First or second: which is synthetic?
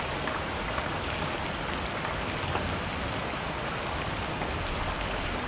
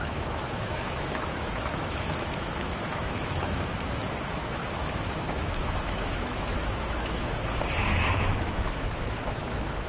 second